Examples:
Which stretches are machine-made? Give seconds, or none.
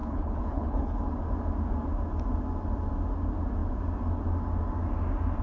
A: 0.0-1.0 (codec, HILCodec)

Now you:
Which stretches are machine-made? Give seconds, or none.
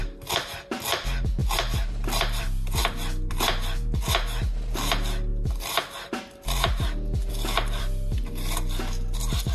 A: none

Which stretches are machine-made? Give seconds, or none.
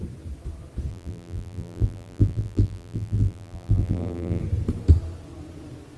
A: 0.9-4.4 (vocoder, BigVGAN v2)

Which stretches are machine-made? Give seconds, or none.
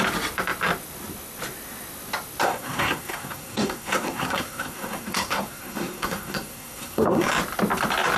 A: 2.4-7.3 (codec, SNAC)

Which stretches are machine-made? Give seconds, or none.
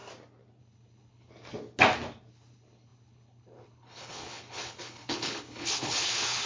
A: 0.6-1.3 (codec, HILCodec); 2.3-6.5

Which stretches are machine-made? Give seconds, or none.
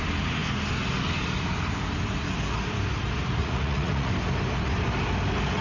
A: 3.4-4.1 (vocoder, Vocos)